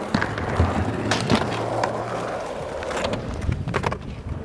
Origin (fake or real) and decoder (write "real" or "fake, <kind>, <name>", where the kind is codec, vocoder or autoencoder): fake, vocoder, BigVGAN v2